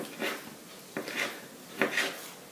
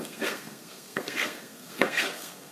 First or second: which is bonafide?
first